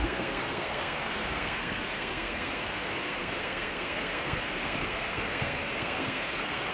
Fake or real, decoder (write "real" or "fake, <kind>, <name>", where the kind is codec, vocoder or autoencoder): fake, codec, SNAC